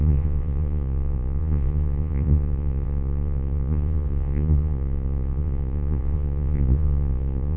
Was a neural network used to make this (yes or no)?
yes